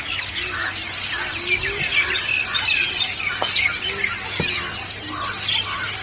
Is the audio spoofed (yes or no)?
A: no